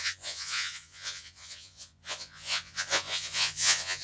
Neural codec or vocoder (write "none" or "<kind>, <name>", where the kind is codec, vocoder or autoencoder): vocoder, Vocos